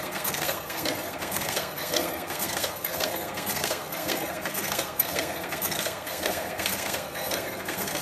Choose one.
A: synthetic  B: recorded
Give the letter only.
A